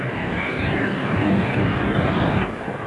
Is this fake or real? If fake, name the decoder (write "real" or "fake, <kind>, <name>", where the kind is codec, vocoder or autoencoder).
fake, codec, DAC